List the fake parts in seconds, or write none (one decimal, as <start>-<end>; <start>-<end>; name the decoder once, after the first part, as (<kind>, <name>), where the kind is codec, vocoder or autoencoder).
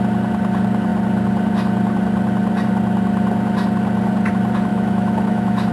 4.7-5.7 (autoencoder, DAC-VAE)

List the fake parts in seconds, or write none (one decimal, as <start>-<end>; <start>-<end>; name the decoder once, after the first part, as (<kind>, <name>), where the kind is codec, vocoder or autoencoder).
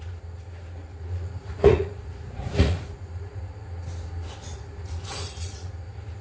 0.9-3.4 (vocoder, Vocos); 4.5-5.7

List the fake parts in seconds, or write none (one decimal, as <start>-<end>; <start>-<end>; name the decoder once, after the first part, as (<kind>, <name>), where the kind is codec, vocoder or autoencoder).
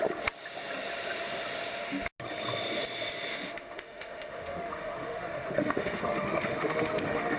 3.3-7.4 (autoencoder, DAC-VAE)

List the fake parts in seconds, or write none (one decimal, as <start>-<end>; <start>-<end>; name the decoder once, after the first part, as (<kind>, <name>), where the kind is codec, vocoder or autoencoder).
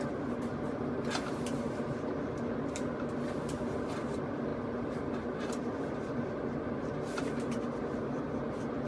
none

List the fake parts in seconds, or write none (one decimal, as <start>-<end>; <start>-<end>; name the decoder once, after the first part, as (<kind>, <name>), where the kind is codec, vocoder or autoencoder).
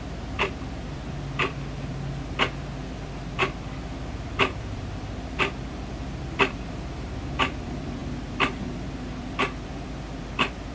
0.0-10.7 (vocoder, BigVGAN v2)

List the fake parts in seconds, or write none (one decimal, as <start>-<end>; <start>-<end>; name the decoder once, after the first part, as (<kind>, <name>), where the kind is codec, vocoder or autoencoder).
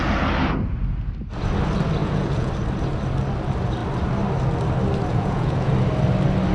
2.0-2.5 (vocoder, Vocos); 5.1-5.7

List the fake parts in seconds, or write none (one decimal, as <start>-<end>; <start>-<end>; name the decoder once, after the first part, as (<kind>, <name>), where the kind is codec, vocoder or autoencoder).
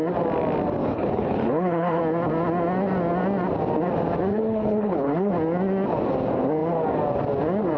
0.8-2.0 (codec, HILCodec); 4.3-5.3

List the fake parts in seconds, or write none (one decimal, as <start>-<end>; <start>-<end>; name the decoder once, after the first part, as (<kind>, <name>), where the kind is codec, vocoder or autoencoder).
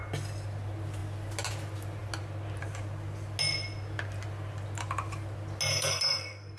5.7-6.6 (codec, SNAC)